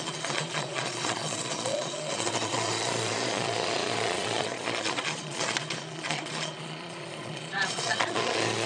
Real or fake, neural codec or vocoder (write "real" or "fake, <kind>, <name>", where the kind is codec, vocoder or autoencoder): fake, vocoder, Vocos